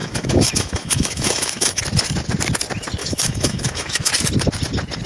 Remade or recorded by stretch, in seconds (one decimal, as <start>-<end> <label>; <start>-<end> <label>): 0.0-1.8 remade; 1.8-3.0 recorded; 3.0-4.1 remade; 4.1-5.1 recorded